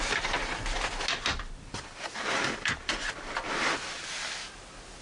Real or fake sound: real